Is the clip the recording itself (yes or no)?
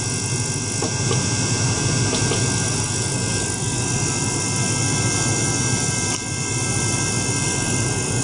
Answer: yes